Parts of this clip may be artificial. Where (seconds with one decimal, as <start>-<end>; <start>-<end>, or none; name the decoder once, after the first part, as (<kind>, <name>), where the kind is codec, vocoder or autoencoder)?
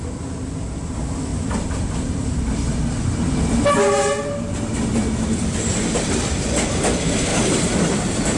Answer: 1.3-2.4 (vocoder, BigVGAN v2); 7.3-8.4